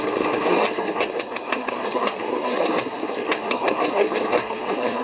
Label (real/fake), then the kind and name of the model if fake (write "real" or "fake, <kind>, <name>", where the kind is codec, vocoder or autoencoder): fake, codec, SNAC